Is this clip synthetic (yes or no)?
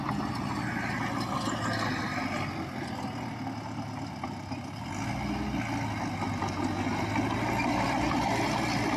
no